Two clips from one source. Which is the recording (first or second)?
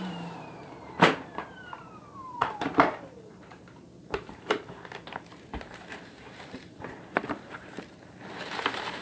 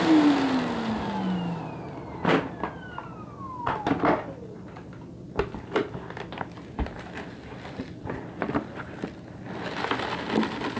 second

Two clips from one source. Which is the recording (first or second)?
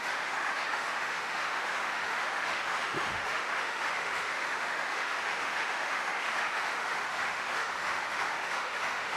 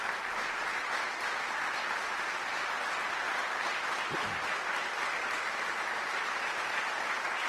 second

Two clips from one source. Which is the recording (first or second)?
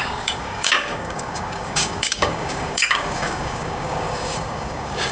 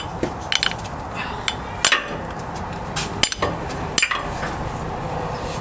second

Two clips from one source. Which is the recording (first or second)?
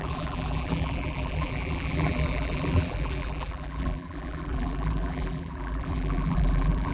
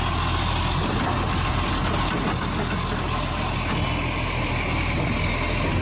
second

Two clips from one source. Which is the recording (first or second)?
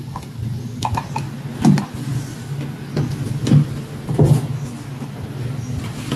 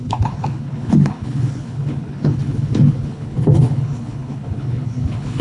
first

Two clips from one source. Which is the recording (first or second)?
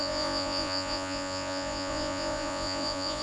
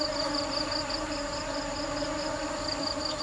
second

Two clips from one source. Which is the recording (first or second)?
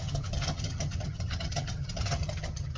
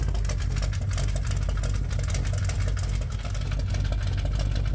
second